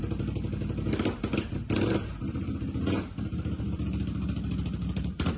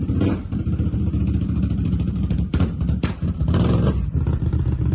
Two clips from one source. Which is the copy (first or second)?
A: second